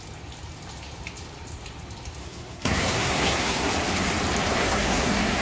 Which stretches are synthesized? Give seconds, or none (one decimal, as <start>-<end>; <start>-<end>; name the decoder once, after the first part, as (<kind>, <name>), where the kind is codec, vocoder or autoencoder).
2.2-3.7 (codec, SNAC); 4.5-5.4